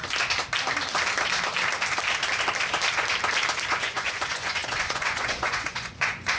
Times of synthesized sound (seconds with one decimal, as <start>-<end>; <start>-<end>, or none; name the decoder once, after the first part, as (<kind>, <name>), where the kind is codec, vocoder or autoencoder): 3.7-6.4 (vocoder, Vocos)

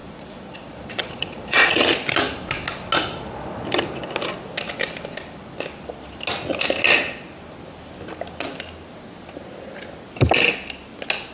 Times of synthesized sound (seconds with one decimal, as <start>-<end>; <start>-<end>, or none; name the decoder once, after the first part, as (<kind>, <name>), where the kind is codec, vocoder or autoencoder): 0.0-1.7 (vocoder, Vocos)